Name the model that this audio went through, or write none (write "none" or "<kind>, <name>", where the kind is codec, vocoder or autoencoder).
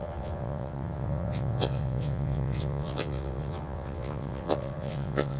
vocoder, WaveNeXt